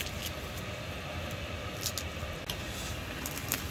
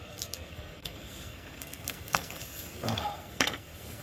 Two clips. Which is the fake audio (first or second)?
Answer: second